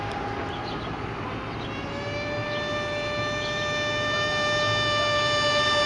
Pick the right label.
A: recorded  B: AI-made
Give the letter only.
A